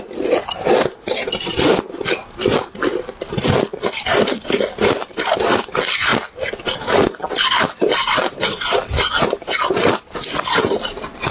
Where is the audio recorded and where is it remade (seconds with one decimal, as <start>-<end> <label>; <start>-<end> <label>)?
0.0-6.1 remade; 6.1-7.5 recorded; 7.5-11.3 remade